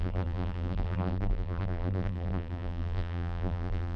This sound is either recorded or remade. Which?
remade